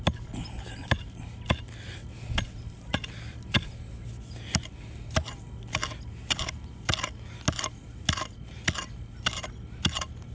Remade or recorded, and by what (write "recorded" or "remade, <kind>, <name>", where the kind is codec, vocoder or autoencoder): recorded